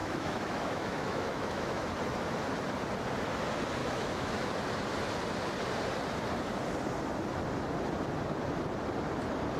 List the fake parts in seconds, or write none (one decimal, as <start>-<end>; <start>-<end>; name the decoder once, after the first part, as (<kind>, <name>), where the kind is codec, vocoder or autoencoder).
0.0-1.9 (autoencoder, DAC-VAE); 3.8-4.5